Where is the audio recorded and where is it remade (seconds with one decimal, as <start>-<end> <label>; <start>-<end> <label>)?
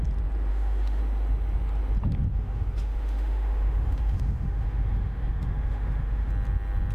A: 0.0-0.5 recorded; 0.5-1.0 remade; 1.0-2.3 recorded; 2.3-6.3 remade; 6.3-6.9 recorded